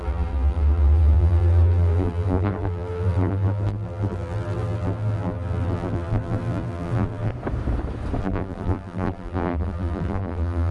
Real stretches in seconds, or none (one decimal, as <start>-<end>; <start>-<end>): 7.3-8.2